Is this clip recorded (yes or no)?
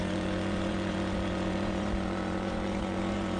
no